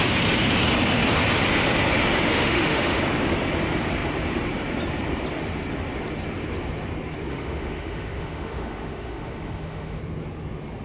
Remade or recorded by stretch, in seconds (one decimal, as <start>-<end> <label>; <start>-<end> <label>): 0.0-2.3 recorded; 2.3-3.0 remade; 3.0-7.3 recorded; 7.3-10.0 remade; 10.0-10.8 recorded

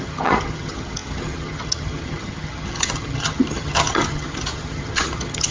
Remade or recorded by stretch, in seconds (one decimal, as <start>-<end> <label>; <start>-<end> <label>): 0.0-5.5 remade

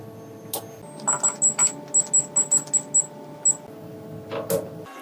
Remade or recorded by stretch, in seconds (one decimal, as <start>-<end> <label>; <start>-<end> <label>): 0.0-5.0 recorded